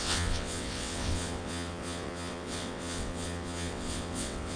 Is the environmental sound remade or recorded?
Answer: remade